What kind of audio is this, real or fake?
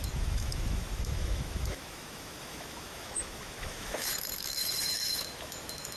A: fake